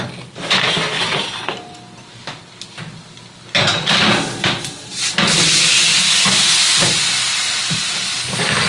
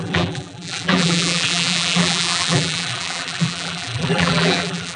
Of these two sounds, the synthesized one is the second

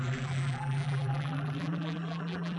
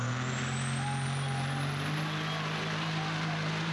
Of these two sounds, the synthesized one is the first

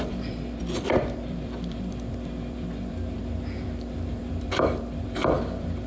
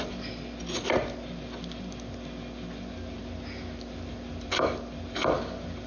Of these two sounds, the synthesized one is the first